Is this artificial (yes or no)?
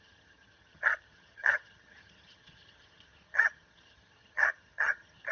yes